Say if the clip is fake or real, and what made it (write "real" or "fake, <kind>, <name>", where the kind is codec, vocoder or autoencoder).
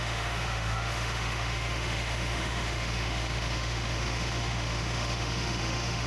fake, autoencoder, DAC-VAE